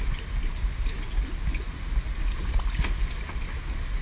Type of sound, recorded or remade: recorded